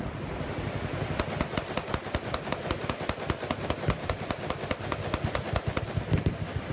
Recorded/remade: recorded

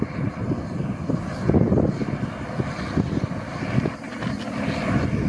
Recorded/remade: recorded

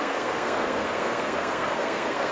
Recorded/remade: remade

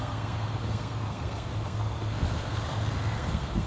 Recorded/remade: remade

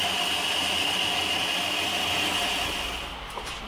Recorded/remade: recorded